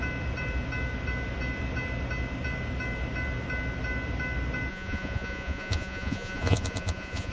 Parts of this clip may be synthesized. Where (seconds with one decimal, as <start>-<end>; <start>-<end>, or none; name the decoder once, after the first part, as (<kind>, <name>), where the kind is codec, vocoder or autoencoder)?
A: 4.7-7.3 (vocoder, Vocos)